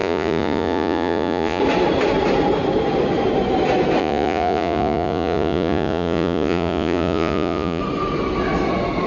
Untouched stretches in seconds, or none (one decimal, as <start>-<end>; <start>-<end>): 1.6-4.0; 7.8-9.1